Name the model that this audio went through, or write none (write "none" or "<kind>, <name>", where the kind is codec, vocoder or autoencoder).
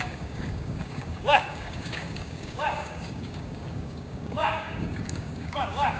codec, DAC